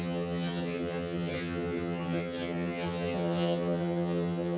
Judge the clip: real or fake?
fake